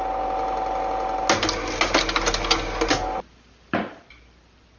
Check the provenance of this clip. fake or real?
real